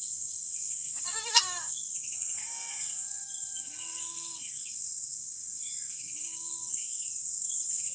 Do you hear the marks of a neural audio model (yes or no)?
yes